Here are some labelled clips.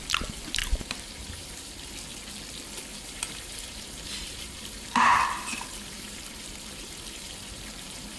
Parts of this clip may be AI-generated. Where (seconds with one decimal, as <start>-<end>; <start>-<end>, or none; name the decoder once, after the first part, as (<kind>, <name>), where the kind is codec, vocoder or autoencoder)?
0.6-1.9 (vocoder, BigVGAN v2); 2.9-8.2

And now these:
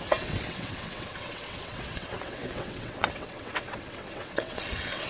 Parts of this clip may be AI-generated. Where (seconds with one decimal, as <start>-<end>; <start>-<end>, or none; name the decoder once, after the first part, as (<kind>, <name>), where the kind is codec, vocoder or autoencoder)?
0.0-5.1 (vocoder, WaveNeXt)

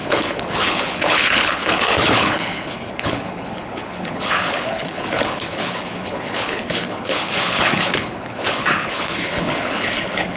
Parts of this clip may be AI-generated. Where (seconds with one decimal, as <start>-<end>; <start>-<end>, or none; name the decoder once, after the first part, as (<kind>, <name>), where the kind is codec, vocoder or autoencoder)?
0.0-10.4 (codec, HILCodec)

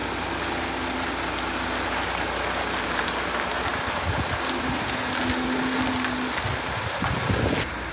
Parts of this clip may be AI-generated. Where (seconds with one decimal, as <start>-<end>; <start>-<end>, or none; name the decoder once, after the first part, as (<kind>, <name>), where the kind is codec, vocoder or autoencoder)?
none